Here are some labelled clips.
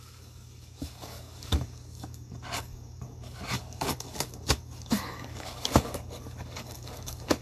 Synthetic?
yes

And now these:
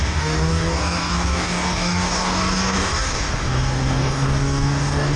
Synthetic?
yes